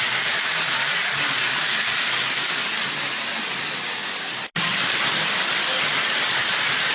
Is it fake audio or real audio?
real